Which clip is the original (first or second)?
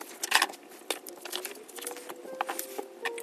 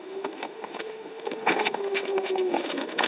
first